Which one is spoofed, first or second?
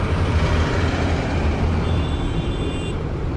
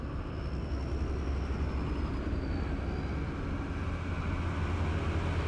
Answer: first